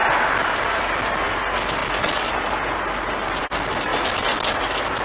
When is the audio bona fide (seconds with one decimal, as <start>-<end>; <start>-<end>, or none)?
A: 0.8-5.0